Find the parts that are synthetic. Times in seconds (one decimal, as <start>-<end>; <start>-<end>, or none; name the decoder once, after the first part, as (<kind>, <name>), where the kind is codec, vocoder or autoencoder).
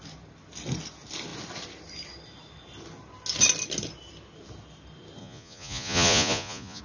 5.2-6.8 (vocoder, Vocos)